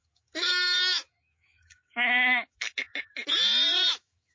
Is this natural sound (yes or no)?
no